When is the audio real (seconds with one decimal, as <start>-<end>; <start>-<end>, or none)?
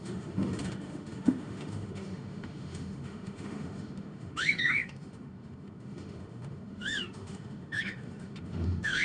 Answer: none